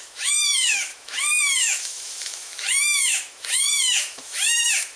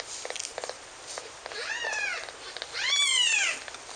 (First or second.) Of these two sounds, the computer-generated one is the first